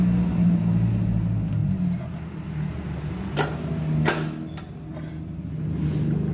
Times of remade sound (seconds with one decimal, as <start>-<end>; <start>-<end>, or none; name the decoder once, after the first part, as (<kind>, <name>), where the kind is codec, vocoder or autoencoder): none